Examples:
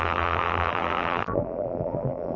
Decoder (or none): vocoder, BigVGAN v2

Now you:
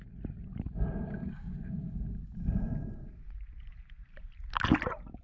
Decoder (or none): none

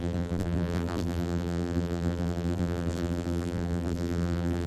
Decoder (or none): vocoder, BigVGAN v2